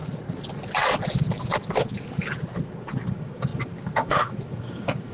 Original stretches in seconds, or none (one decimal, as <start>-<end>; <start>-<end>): 0.0-3.1